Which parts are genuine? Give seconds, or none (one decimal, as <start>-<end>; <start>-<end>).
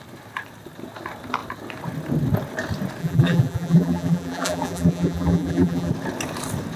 0.0-3.0; 5.9-6.8